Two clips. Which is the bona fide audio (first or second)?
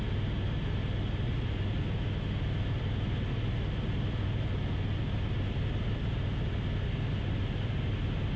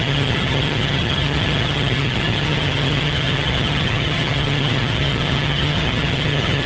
first